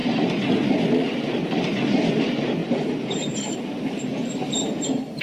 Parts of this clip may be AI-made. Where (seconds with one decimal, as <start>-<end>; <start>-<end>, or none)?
2.6-3.6